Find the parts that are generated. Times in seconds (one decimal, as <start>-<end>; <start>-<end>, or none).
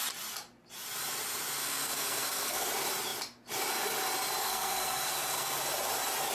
1.6-2.7; 4.4-5.6